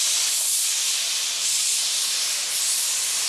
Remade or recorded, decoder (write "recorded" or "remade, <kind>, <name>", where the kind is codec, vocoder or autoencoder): remade, vocoder, BigVGAN v2